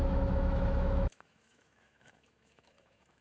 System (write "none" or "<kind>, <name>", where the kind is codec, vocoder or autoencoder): autoencoder, DAC-VAE